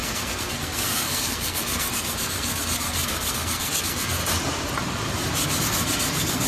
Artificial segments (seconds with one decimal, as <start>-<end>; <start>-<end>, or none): 0.0-4.2; 5.6-6.5